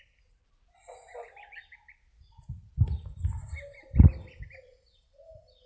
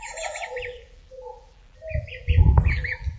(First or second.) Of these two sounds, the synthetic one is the second